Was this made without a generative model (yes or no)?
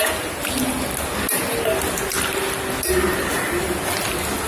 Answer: yes